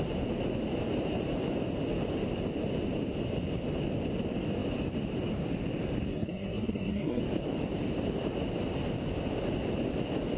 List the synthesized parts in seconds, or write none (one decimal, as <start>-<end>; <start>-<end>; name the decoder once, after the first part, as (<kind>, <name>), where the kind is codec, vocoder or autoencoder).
6.1-7.2 (codec, SNAC)